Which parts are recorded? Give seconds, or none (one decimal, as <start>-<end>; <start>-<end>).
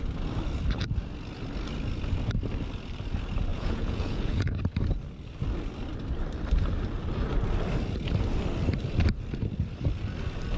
0.0-3.5; 4.5-10.6